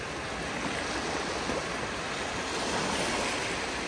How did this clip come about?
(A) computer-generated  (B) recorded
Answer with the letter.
B